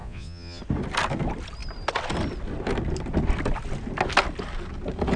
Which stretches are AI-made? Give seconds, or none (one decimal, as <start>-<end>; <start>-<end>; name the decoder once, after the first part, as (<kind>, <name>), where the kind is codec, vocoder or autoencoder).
0.0-0.6 (vocoder, Vocos)